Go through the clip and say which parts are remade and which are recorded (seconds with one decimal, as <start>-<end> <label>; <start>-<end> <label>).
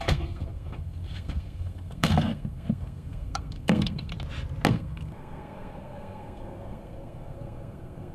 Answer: 0.0-4.1 remade; 4.1-4.7 recorded; 4.7-8.1 remade